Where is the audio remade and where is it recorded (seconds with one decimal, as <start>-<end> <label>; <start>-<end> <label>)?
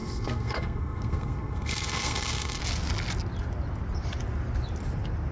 0.0-2.6 remade; 2.6-5.3 recorded